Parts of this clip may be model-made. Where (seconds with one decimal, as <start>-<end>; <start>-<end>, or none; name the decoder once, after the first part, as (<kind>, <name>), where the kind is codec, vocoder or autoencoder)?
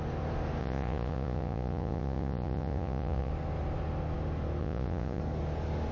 0.6-3.3 (vocoder, Vocos); 4.6-5.2